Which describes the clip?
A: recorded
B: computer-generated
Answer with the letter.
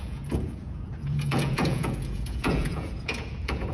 B